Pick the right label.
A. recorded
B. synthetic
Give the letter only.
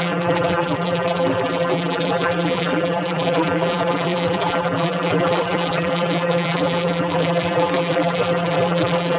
B